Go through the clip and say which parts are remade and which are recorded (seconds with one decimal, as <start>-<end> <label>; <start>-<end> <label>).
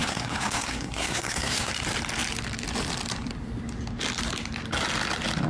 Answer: 0.0-1.7 remade; 1.7-5.5 recorded